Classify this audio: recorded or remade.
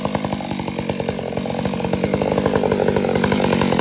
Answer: recorded